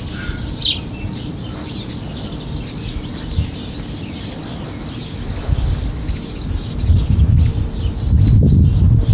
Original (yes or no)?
yes